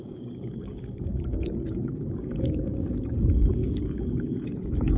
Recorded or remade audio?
remade